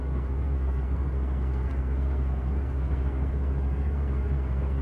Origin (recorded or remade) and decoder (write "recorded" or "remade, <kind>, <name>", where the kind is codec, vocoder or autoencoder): remade, codec, SNAC